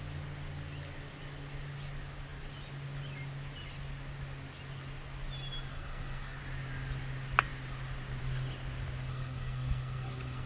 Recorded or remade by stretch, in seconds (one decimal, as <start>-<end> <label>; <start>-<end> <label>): 0.0-5.7 recorded; 5.7-6.4 remade; 6.4-9.1 recorded; 9.1-10.5 remade